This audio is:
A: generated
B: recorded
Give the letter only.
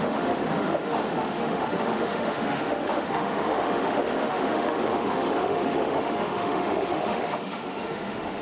A